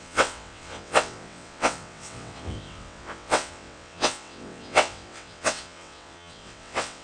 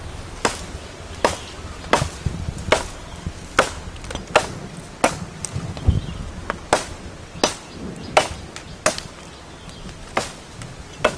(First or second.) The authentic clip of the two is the second